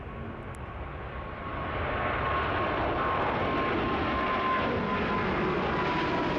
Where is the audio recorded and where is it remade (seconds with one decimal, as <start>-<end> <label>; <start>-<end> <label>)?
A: 0.0-6.4 recorded